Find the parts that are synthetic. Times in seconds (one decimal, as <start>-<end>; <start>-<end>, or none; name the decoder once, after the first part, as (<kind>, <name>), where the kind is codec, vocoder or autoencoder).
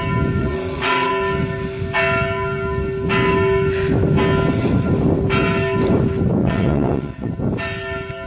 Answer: 0.4-1.1 (vocoder, WaveNeXt); 6.4-7.3